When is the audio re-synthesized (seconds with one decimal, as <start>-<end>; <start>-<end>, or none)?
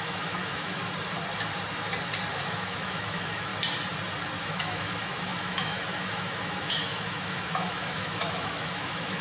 0.0-0.8; 2.3-3.5; 4.4-9.2